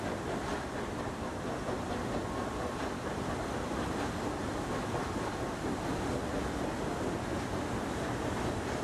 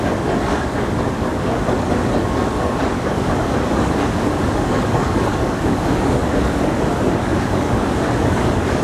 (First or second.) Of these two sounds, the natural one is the first